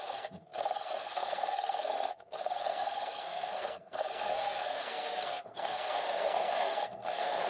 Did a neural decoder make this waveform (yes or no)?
yes